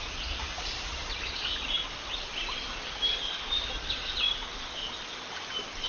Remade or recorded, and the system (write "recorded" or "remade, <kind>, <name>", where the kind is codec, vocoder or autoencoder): recorded